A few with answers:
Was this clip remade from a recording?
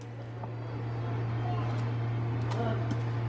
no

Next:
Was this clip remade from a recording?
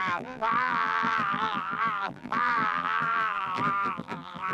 yes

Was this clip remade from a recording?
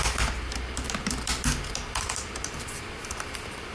yes